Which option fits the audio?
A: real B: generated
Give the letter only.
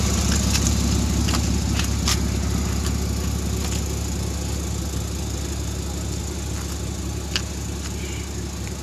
A